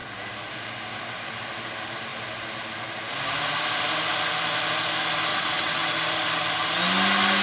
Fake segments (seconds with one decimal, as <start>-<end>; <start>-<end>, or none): 5.3-5.8